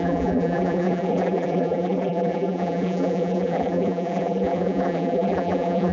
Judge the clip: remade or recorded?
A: remade